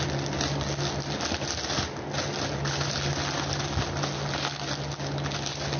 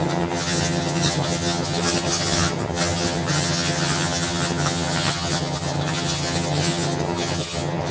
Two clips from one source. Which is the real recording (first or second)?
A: first